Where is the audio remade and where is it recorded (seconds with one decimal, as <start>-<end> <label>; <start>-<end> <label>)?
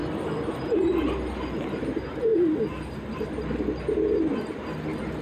0.0-5.2 recorded